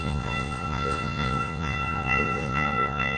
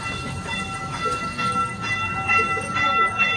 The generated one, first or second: first